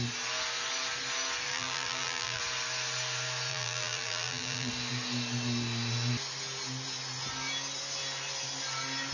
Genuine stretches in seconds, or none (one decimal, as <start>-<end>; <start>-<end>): 0.0-1.5; 2.4-3.5; 4.7-9.1